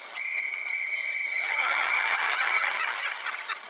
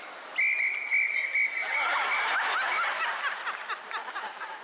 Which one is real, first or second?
second